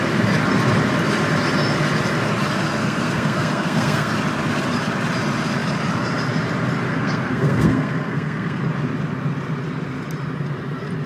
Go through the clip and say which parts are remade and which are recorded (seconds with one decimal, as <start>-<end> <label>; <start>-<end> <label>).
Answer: 0.0-2.8 recorded; 2.8-4.1 remade; 4.1-6.9 recorded; 6.9-8.6 remade; 8.6-11.1 recorded